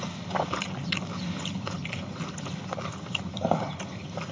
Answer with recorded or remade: recorded